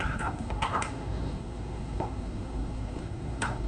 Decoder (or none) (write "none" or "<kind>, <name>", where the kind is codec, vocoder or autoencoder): codec, SNAC